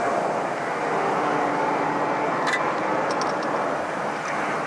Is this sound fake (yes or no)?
no